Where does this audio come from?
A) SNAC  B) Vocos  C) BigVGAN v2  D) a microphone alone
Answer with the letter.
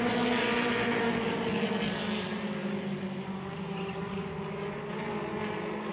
D